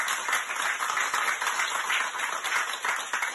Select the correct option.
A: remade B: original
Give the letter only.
B